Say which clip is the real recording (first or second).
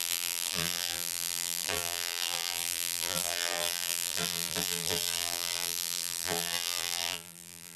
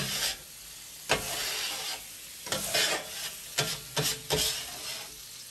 second